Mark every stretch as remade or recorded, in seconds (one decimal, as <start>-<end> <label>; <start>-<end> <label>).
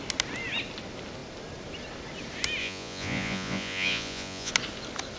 0.0-2.6 recorded; 2.6-4.5 remade; 4.5-5.2 recorded